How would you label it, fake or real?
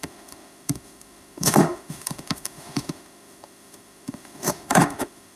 fake